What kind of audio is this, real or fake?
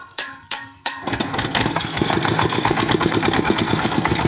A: fake